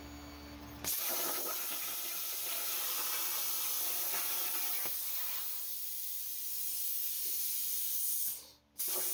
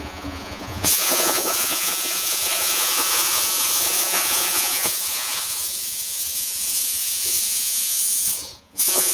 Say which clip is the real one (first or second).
first